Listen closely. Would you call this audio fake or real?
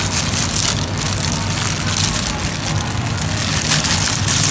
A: real